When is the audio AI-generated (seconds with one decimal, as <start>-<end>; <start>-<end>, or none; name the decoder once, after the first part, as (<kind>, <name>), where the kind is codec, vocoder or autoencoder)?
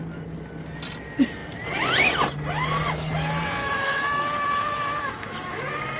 3.6-5.6 (autoencoder, DAC-VAE)